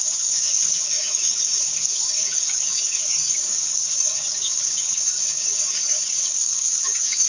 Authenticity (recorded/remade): remade